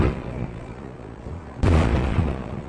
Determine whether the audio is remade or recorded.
remade